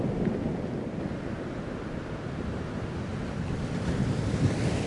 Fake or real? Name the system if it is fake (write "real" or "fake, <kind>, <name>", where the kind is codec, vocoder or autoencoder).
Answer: real